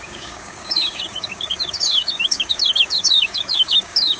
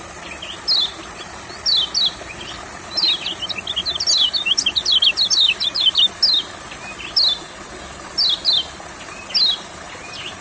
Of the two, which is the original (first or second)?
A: second